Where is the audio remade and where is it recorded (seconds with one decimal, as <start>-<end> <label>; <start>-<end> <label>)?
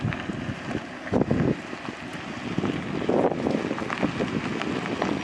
0.0-5.2 recorded